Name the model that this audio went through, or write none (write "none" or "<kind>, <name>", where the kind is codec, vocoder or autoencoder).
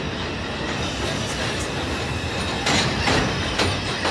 none